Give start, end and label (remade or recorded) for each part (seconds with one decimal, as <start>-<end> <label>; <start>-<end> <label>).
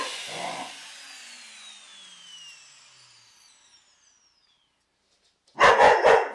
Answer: 0.0-1.9 remade; 1.9-5.7 recorded; 5.7-6.3 remade